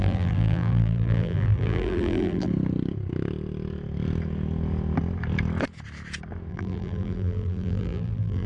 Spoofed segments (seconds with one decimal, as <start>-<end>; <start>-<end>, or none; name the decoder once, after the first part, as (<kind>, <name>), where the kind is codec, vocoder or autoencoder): 0.0-2.5 (vocoder, BigVGAN v2); 6.5-8.5